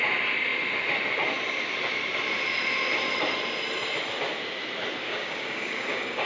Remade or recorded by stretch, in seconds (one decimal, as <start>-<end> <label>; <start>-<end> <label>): 0.0-5.0 recorded; 5.0-6.3 remade